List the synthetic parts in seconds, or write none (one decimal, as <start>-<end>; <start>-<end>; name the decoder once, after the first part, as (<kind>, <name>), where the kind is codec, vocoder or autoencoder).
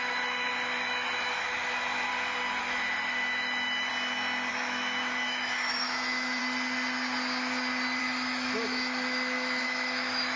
0.0-2.1 (autoencoder, DAC-VAE); 2.6-3.9; 4.5-6.4; 8.0-10.4